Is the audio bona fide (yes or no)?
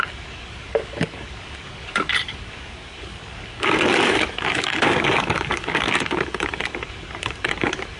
no